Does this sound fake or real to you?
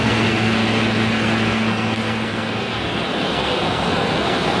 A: fake